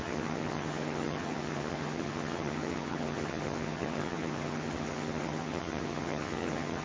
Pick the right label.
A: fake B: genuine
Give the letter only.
A